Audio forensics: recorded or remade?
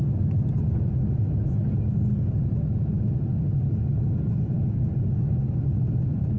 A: recorded